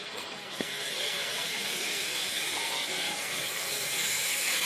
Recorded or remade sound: remade